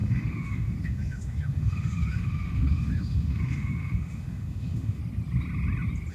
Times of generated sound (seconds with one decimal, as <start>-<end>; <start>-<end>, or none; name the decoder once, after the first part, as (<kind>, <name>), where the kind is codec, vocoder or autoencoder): 0.0-5.0 (autoencoder, DAC-VAE)